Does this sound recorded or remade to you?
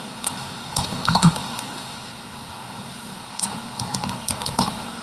remade